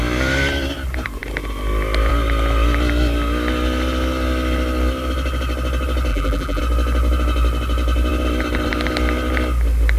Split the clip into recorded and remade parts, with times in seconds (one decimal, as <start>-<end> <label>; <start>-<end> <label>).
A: 0.0-6.1 recorded; 6.1-6.6 remade; 6.6-10.0 recorded